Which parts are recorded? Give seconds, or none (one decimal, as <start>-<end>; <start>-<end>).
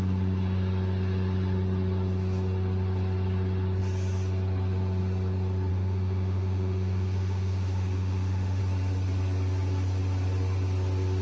0.0-5.7; 8.6-11.2